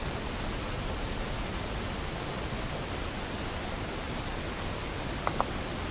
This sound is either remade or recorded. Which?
recorded